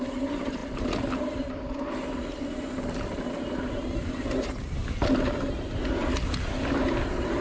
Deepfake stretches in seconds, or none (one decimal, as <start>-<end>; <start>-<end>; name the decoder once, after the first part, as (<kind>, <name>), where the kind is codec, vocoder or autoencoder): none